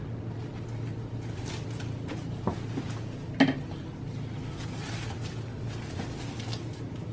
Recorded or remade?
recorded